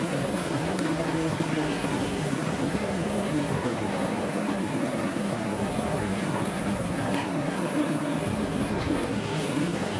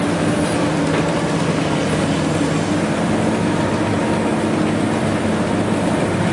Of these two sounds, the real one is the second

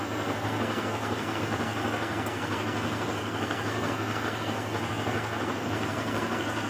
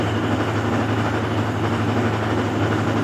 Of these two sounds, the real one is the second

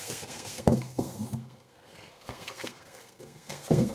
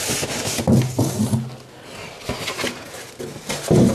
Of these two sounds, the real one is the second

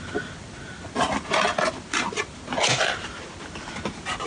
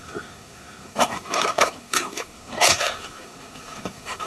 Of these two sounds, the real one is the first